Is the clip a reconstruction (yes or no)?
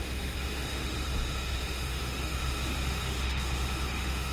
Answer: yes